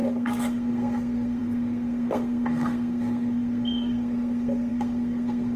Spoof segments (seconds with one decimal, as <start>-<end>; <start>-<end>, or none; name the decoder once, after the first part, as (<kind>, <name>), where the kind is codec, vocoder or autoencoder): 0.0-5.6 (codec, SNAC)

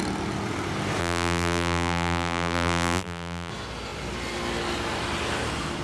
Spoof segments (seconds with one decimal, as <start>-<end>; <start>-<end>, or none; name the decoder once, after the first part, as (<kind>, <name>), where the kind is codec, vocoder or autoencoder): 1.0-3.5 (vocoder, BigVGAN v2)

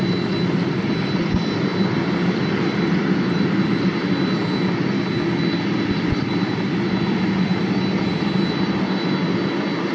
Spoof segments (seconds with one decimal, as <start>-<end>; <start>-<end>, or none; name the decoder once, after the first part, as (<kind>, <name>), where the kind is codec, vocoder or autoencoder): none

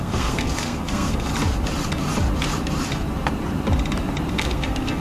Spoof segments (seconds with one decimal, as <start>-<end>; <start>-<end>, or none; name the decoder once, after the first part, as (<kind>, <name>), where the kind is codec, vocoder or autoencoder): 0.0-1.3 (codec, SNAC); 4.3-5.0

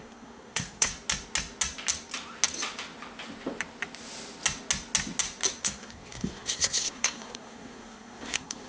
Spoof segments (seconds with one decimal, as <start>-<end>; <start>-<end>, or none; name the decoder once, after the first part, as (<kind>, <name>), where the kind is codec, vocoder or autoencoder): 0.0-0.9 (codec, SNAC); 5.6-8.7

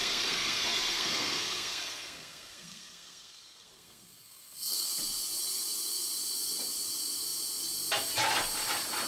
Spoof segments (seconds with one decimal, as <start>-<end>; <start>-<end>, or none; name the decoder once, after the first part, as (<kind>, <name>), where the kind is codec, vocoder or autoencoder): 0.0-4.9 (codec, SNAC)